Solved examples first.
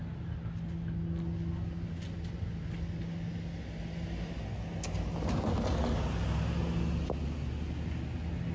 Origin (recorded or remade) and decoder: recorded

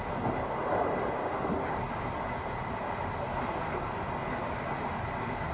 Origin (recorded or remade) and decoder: recorded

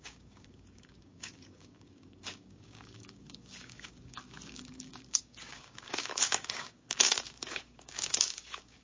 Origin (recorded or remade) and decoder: remade, codec, DAC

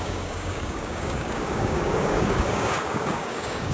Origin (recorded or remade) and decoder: remade, codec, DAC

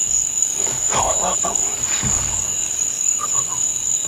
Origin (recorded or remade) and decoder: remade, codec, DAC